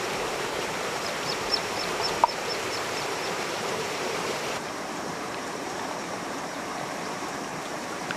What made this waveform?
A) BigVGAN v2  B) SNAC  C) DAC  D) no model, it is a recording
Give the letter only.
A